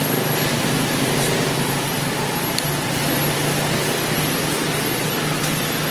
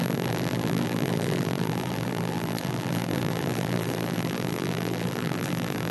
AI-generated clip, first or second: second